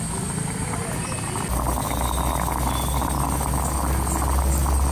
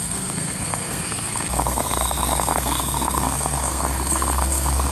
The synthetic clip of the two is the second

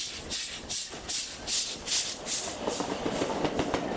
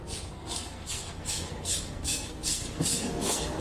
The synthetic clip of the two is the second